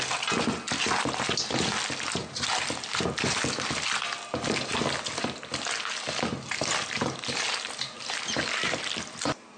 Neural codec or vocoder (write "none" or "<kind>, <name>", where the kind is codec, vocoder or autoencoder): none